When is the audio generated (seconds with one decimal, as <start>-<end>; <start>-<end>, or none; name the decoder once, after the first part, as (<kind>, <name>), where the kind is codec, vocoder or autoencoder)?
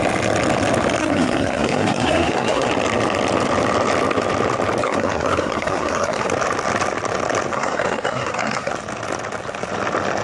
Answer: 1.0-2.7 (codec, SNAC); 4.8-6.3; 7.5-8.7